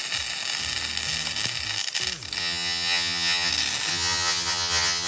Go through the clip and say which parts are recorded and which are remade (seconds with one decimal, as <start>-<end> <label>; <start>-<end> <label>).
0.0-2.4 recorded; 2.4-3.5 remade; 3.5-3.9 recorded; 3.9-5.1 remade

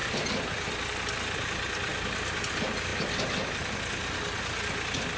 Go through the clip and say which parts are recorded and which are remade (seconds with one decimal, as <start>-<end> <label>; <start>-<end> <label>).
0.0-5.2 recorded